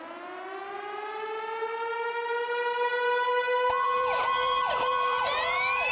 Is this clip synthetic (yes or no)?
yes